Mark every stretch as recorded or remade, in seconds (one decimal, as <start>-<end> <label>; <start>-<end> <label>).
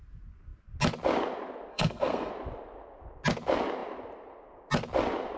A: 0.0-1.7 recorded; 1.7-2.3 remade; 2.3-5.4 recorded